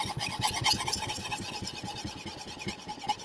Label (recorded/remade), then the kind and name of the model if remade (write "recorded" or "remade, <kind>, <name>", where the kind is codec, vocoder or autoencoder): recorded